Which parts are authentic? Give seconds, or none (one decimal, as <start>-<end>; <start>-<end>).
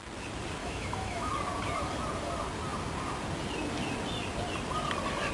0.0-0.6; 1.3-5.3